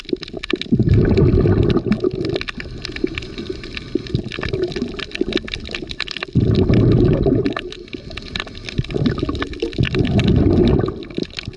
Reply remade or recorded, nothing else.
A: recorded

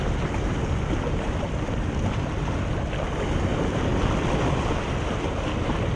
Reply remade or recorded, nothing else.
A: recorded